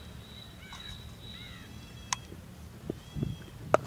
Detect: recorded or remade recorded